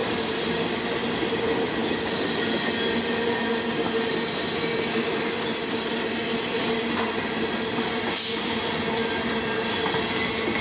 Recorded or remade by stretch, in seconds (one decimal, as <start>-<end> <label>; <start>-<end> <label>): 0.0-1.4 remade; 1.4-10.6 recorded